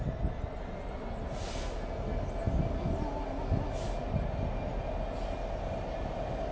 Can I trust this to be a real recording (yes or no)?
yes